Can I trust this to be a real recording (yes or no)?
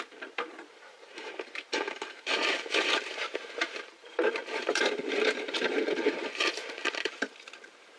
no